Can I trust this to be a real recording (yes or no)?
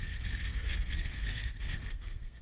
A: no